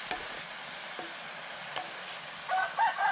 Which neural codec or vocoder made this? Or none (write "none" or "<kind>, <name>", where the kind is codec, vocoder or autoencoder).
none